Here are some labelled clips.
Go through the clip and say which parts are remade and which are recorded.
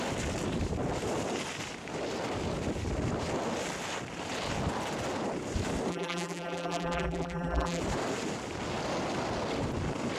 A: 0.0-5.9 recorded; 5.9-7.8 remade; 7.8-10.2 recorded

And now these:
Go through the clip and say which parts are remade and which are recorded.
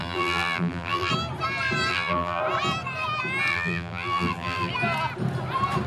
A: 0.0-1.1 remade; 1.1-1.9 recorded; 1.9-2.4 remade; 2.4-3.5 recorded; 3.5-4.7 remade; 4.7-5.9 recorded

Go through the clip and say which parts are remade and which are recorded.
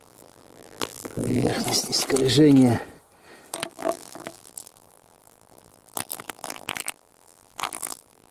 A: 0.0-1.5 remade; 1.5-3.7 recorded; 3.7-8.3 remade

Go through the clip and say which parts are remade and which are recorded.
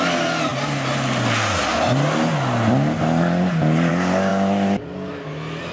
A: 0.0-5.7 recorded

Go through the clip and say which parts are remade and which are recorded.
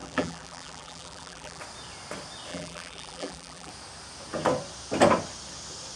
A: 0.0-1.6 remade; 1.6-2.5 recorded; 2.5-3.7 remade; 3.7-6.0 recorded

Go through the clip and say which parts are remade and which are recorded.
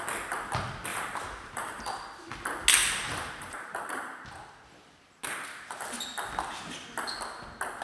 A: 0.0-0.9 recorded; 0.9-1.8 remade; 1.8-2.8 recorded; 2.8-4.2 remade; 4.2-7.8 recorded